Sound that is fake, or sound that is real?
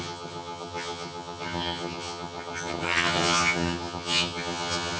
fake